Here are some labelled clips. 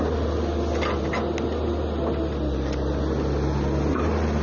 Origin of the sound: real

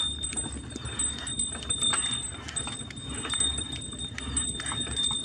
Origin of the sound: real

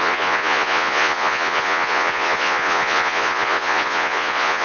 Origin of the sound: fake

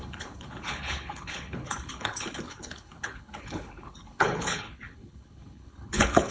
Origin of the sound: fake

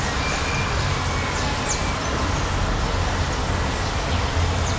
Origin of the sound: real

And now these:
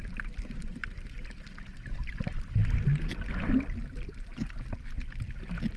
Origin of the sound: real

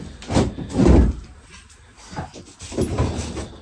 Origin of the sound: real